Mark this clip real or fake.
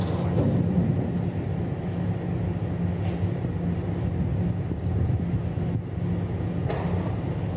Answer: real